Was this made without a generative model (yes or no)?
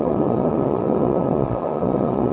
no